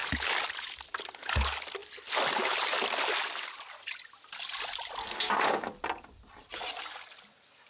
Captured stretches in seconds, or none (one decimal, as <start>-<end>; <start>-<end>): 0.0-7.7